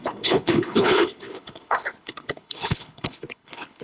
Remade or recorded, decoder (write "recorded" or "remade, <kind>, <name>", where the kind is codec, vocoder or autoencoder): remade, codec, HILCodec